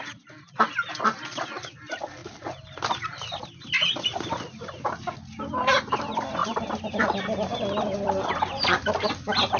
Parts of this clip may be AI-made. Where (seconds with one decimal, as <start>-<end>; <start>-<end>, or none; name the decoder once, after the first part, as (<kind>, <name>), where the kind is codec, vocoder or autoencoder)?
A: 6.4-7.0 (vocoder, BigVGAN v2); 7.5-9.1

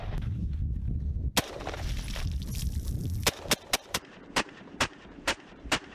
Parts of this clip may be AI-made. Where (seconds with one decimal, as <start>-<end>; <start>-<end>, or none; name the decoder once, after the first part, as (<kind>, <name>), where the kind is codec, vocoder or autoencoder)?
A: 0.0-0.4 (vocoder, BigVGAN v2); 3.9-5.9

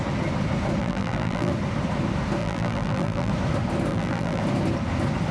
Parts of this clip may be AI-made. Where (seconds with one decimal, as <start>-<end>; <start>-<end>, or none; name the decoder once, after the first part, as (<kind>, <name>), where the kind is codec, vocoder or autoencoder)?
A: 0.8-1.5 (vocoder, BigVGAN v2); 2.4-3.3; 3.9-4.4

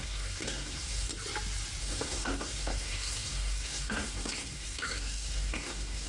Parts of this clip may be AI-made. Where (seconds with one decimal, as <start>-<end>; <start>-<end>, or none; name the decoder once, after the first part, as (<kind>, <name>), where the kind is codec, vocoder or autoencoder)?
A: 0.0-1.1 (codec, SNAC); 1.8-6.1